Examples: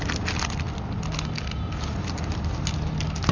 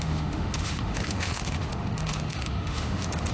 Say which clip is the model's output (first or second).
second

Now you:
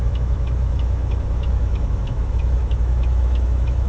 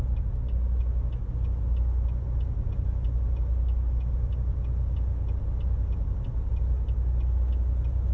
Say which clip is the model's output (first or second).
first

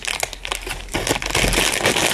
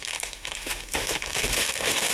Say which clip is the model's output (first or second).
second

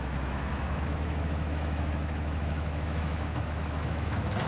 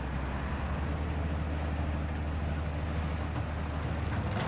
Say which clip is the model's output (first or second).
first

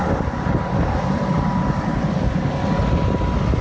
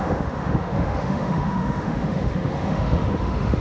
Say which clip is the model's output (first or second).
second